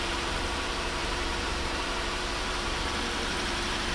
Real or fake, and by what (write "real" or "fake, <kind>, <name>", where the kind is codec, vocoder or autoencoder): fake, vocoder, BigVGAN v2